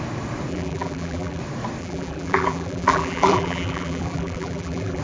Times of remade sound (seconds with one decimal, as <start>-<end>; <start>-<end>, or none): 0.5-1.4; 1.8-5.0